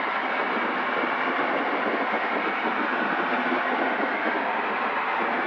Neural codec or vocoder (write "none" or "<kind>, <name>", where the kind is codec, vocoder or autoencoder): none